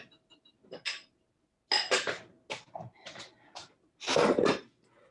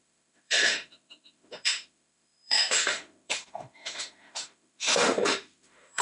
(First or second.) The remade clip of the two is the second